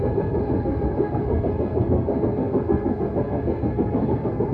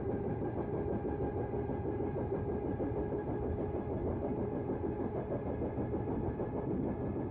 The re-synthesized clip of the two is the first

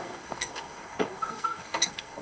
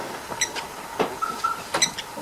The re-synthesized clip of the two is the first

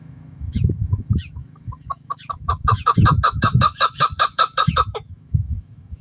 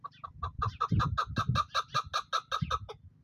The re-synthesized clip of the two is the first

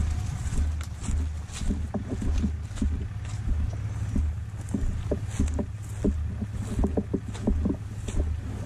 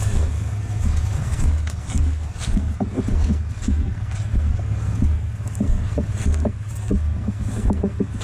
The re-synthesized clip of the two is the second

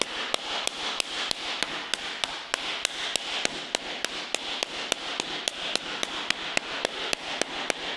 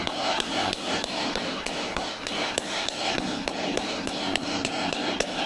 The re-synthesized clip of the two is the second